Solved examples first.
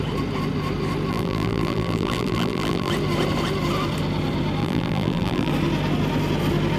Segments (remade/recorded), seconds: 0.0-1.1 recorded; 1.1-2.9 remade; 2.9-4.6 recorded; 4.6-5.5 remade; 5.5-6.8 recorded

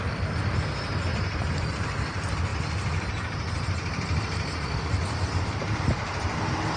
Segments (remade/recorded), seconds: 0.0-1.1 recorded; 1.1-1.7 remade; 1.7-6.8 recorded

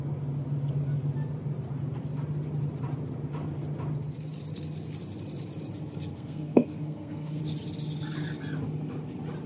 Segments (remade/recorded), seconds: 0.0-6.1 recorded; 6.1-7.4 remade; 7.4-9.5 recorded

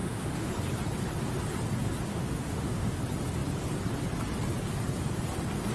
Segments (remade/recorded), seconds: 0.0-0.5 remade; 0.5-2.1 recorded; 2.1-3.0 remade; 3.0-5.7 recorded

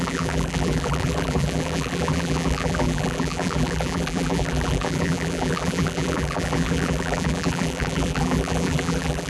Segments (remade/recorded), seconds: 0.0-9.3 remade

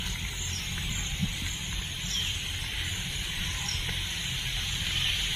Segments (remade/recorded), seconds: 0.0-1.2 recorded; 1.2-3.6 remade; 3.6-5.4 recorded

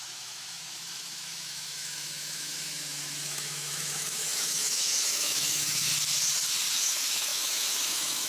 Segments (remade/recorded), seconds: 0.0-5.9 remade; 5.9-6.8 recorded; 6.8-8.3 remade

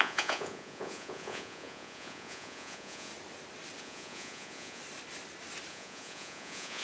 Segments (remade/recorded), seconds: 0.0-3.1 remade; 3.1-3.8 recorded; 3.8-4.8 remade; 4.8-5.7 recorded; 5.7-6.8 remade